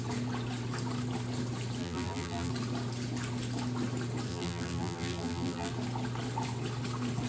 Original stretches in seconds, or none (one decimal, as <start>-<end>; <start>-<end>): 0.0-1.8; 2.5-4.3; 5.7-7.3